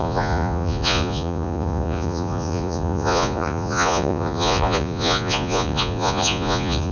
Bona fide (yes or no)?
no